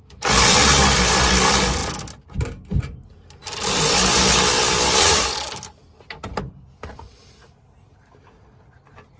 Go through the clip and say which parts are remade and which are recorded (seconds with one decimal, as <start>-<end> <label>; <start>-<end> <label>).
0.0-9.2 recorded